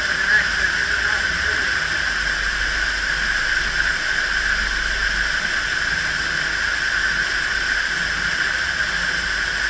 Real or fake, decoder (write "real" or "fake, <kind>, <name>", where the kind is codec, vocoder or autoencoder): real